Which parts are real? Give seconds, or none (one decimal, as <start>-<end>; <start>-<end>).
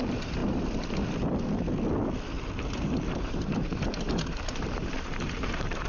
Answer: 0.4-2.7